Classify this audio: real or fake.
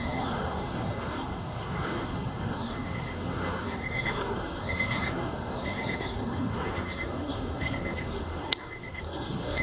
fake